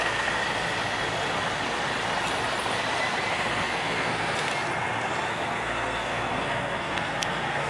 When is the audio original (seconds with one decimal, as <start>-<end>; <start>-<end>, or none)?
0.4-3.3; 4.5-5.3